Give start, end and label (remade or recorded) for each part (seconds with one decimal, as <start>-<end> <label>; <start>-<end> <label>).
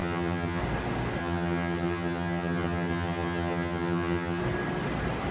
0.0-0.6 remade; 0.6-1.2 recorded; 1.2-4.4 remade; 4.4-5.3 recorded